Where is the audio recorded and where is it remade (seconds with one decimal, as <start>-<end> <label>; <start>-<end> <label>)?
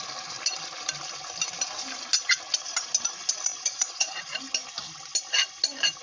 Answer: 0.0-3.5 recorded; 3.5-4.4 remade; 4.4-6.0 recorded